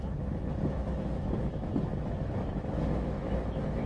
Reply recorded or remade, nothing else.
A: remade